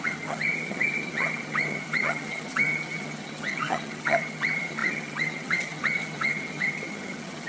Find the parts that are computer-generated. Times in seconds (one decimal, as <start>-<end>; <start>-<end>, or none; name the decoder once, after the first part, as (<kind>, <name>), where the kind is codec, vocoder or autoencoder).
0.0-7.5 (vocoder, HiFi-GAN)